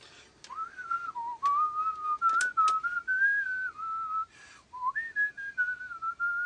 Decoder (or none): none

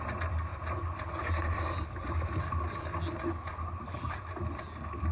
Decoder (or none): none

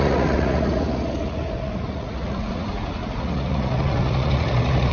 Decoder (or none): vocoder, Vocos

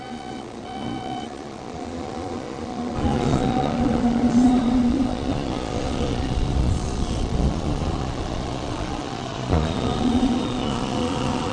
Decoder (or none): vocoder, Vocos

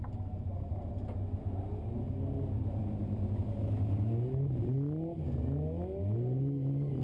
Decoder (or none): none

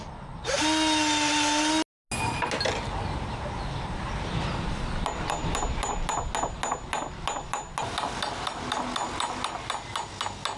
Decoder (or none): none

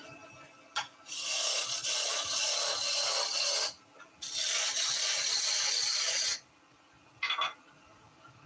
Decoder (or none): none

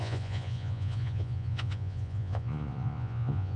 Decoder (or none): vocoder, Vocos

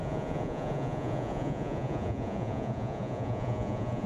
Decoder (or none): vocoder, Vocos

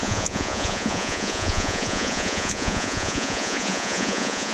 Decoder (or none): vocoder, Vocos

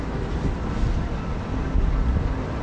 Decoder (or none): none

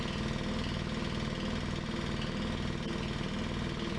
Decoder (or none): none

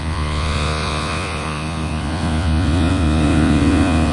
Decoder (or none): vocoder, Vocos